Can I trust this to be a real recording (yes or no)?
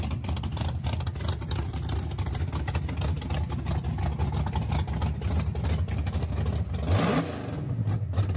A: yes